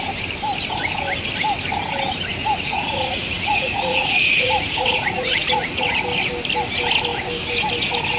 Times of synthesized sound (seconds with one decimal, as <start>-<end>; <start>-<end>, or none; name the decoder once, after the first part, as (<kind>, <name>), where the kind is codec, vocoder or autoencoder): 2.4-6.0 (vocoder, Vocos)